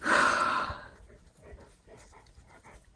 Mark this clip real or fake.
real